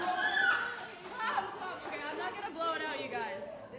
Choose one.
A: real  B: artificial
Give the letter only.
A